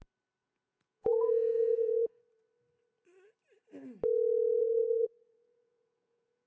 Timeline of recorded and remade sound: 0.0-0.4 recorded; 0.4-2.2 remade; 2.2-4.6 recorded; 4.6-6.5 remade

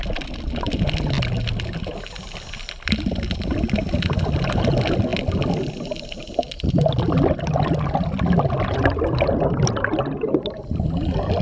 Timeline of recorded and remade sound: 0.0-11.4 recorded

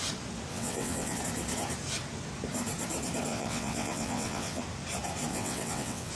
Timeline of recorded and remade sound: 0.0-0.5 recorded; 0.5-1.2 remade; 1.2-3.3 recorded; 3.3-4.6 remade; 4.6-5.3 recorded; 5.3-6.1 remade

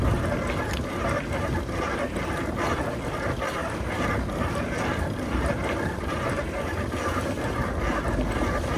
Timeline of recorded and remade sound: 0.0-3.6 recorded; 3.6-7.5 remade; 7.5-8.8 recorded